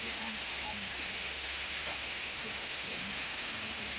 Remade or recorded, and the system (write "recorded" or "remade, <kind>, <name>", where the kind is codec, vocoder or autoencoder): remade, autoencoder, DAC-VAE